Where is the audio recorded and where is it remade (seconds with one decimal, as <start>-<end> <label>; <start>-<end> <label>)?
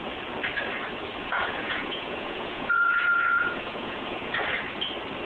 0.0-1.2 recorded; 1.2-4.3 remade; 4.3-5.2 recorded